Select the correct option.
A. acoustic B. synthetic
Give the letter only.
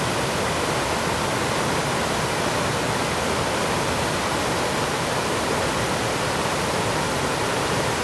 A